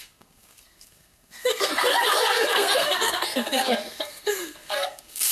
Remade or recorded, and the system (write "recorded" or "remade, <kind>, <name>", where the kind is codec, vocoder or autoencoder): remade, codec, SNAC